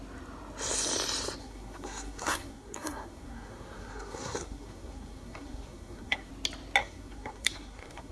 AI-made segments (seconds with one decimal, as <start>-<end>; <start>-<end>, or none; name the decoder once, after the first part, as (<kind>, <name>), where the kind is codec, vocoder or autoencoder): 1.4-6.3 (codec, SNAC); 6.8-8.1